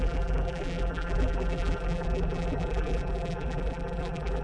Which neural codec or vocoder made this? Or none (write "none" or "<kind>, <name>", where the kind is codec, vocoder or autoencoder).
vocoder, BigVGAN v2